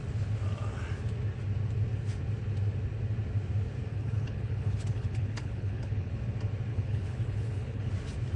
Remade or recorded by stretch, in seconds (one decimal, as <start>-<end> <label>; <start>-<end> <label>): 0.0-3.9 recorded; 3.9-6.1 remade; 6.1-6.7 recorded; 6.7-7.9 remade; 7.9-8.4 recorded